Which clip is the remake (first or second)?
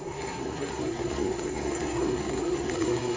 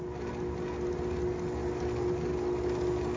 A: first